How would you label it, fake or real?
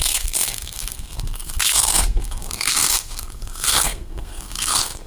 fake